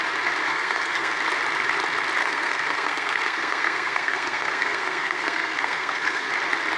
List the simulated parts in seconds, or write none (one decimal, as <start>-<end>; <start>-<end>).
0.5-1.1; 2.2-6.3